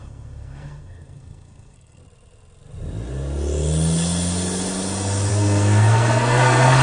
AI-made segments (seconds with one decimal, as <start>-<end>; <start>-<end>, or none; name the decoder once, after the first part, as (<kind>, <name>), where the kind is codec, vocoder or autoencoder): 0.0-2.0 (codec, SNAC); 5.3-6.8